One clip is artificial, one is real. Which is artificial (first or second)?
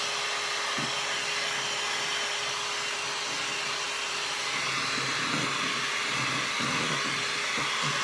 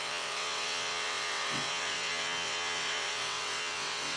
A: second